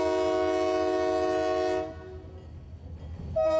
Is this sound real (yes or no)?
yes